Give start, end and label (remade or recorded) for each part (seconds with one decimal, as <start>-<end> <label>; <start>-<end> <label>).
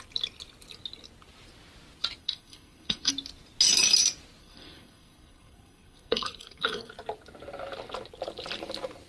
0.0-2.2 recorded; 2.2-3.1 remade; 3.1-4.4 recorded; 4.4-6.9 remade; 6.9-9.1 recorded